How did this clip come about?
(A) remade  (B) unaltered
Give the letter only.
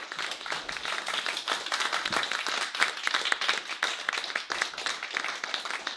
B